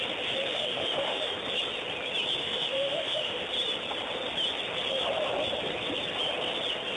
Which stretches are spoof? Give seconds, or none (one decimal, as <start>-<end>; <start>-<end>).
0.5-1.3; 2.4-3.4